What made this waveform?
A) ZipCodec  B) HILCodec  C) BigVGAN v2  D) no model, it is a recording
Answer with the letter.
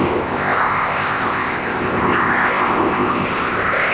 A